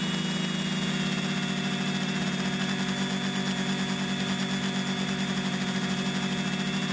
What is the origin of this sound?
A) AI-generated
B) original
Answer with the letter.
B